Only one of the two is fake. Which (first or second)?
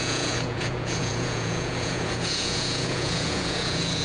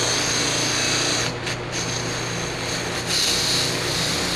first